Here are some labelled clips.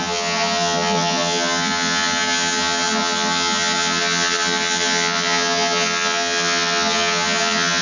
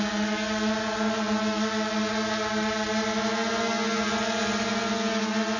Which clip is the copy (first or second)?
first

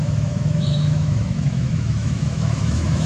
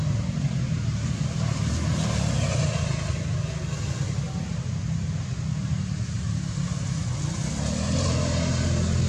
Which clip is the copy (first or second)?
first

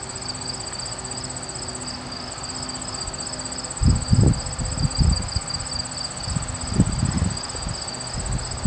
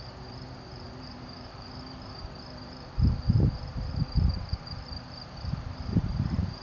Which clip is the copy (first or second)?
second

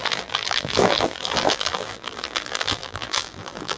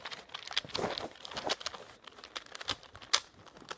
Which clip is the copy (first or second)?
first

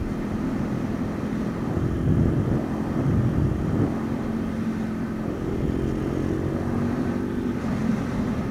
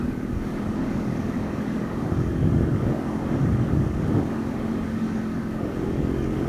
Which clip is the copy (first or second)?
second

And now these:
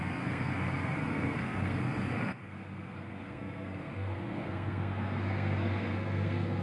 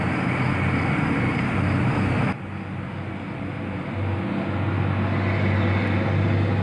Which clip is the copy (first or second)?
first